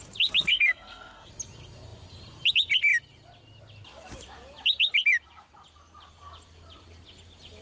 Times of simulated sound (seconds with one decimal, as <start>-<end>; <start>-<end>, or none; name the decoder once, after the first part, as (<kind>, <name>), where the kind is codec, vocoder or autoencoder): 0.5-1.3 (codec, SNAC)